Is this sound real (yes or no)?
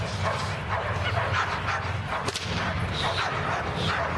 yes